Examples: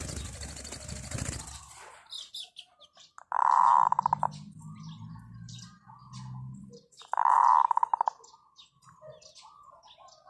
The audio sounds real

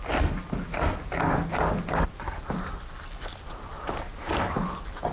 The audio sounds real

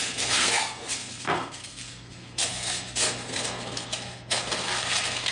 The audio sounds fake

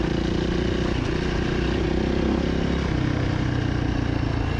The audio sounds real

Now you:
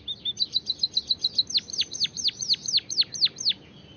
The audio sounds real